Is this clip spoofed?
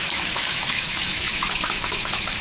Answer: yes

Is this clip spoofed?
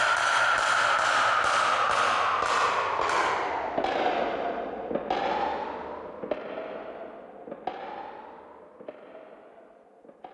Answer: no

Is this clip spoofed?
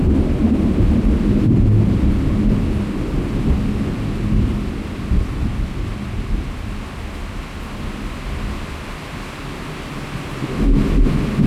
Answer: no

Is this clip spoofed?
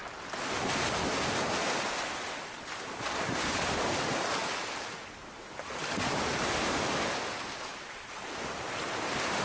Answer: no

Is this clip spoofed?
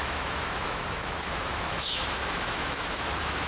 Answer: yes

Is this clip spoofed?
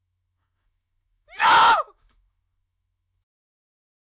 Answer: yes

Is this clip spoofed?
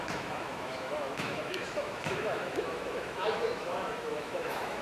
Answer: yes